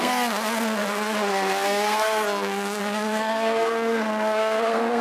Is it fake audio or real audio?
fake